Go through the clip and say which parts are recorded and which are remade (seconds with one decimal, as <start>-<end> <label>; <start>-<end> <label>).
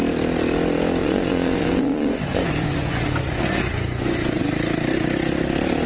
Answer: 0.0-1.0 recorded; 1.0-4.4 remade; 4.4-5.9 recorded